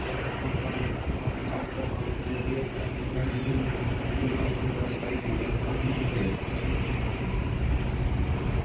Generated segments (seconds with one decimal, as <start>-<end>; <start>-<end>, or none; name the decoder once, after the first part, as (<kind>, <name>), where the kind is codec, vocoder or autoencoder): 3.2-6.5 (vocoder, BigVGAN v2)